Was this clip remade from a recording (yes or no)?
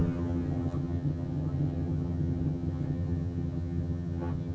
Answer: yes